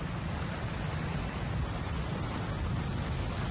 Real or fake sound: real